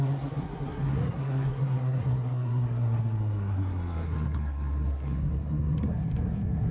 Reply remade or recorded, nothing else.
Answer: remade